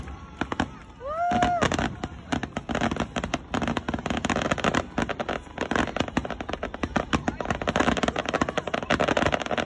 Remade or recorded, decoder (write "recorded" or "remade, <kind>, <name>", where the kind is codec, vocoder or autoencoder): recorded